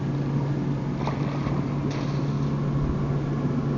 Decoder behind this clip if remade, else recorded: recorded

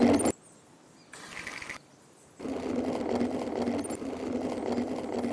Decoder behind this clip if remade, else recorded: recorded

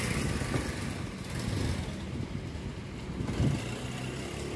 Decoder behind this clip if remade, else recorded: recorded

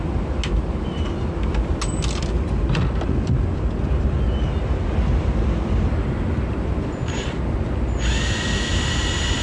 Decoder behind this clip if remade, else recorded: recorded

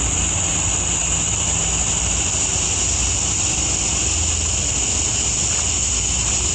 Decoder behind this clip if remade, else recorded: recorded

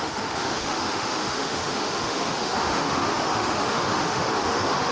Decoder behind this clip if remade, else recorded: remade, autoencoder, DAC-VAE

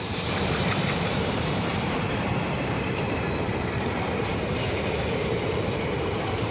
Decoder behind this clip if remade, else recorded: remade, vocoder, BigVGAN v2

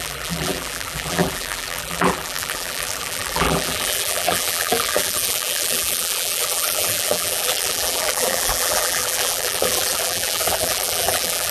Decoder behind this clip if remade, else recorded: remade, vocoder, BigVGAN v2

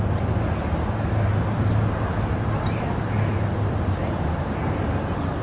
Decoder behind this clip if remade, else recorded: recorded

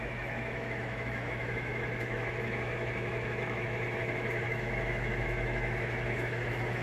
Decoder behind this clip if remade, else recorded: remade, autoencoder, DAC-VAE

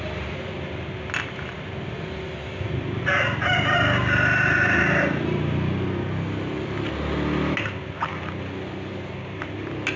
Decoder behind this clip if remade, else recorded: recorded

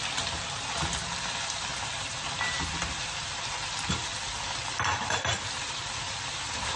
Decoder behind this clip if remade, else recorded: recorded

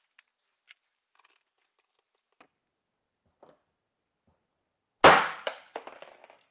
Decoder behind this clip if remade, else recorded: recorded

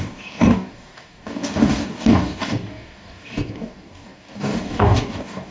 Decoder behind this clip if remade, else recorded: remade, codec, DAC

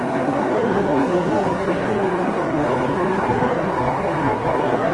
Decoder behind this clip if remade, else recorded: remade, codec, SNAC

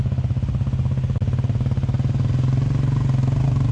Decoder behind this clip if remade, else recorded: recorded